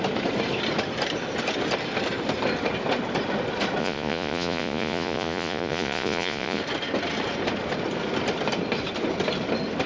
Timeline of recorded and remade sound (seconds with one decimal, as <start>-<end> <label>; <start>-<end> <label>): 0.0-3.8 recorded; 3.8-6.6 remade; 6.6-9.9 recorded

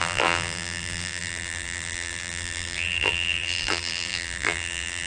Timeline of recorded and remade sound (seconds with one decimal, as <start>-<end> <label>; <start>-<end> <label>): 0.0-5.1 remade